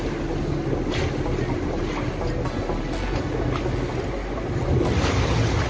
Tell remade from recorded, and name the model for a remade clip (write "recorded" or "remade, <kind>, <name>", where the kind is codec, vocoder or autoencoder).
recorded